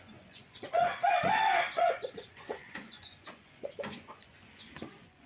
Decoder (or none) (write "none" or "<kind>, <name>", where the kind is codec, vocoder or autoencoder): vocoder, Vocos